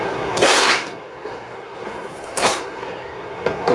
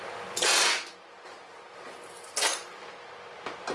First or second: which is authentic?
second